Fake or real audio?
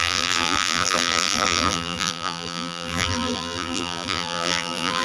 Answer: fake